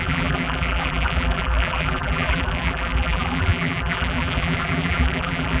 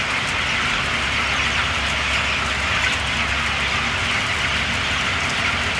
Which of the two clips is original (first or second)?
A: second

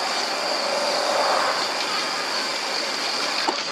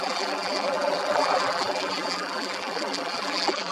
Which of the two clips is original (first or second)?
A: first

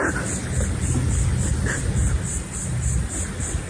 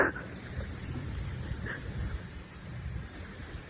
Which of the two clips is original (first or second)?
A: first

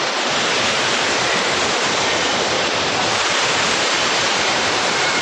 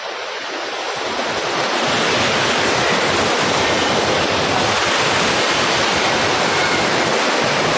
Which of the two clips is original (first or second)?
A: second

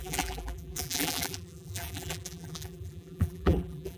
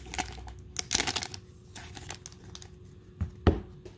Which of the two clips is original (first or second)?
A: second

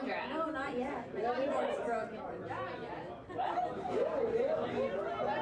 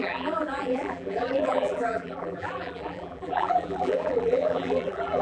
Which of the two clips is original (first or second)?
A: first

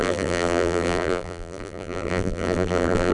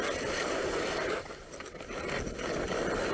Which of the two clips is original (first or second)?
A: second